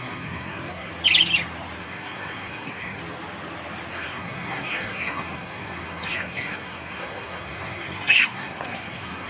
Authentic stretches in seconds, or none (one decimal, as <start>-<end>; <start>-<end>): 0.9-1.8; 3.0-3.9